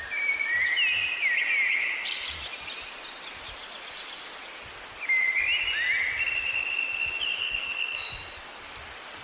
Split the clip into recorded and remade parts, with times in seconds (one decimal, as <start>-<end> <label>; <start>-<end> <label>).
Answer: 0.0-7.4 recorded; 7.4-8.1 remade; 8.1-9.2 recorded